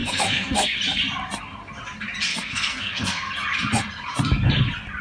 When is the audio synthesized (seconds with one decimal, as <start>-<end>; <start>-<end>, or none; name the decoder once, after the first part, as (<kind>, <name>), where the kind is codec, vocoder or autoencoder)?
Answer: 0.0-0.8 (codec, SNAC); 2.3-3.3